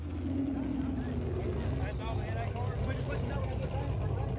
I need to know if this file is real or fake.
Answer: real